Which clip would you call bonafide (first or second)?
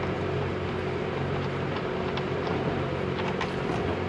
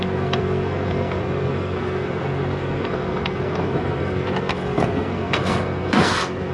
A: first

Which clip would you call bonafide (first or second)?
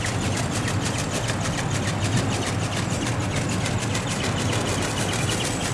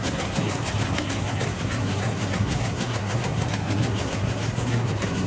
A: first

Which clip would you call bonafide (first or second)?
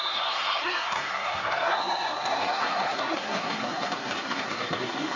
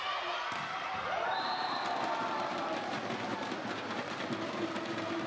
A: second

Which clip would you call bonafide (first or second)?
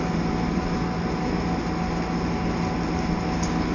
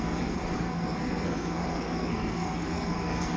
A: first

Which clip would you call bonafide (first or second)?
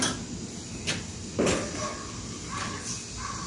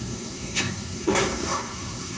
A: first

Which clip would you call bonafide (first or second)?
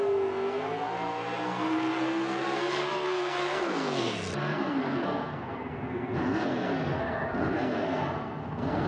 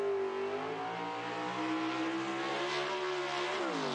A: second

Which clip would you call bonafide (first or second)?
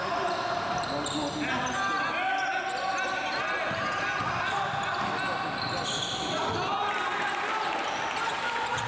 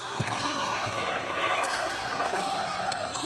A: first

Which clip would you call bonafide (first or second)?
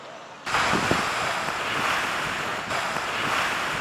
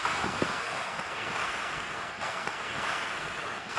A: first